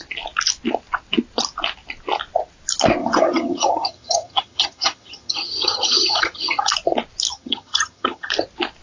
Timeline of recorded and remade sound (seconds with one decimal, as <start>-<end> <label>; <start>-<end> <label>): 0.0-3.0 recorded; 3.0-6.7 remade; 6.7-7.3 recorded; 7.3-8.3 remade; 8.3-8.8 recorded